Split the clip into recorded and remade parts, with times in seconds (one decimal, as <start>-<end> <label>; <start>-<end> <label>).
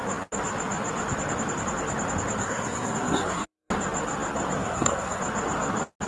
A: 0.0-2.4 recorded; 2.4-3.7 remade; 3.7-4.6 recorded; 4.6-5.2 remade; 5.2-6.1 recorded